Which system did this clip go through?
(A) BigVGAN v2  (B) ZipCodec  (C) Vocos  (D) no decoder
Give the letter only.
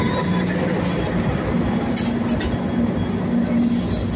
D